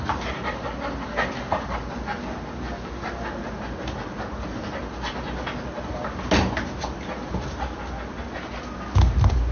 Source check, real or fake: real